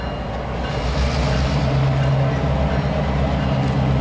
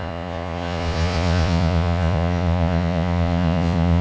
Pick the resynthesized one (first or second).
second